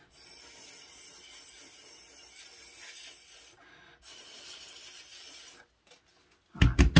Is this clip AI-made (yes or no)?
no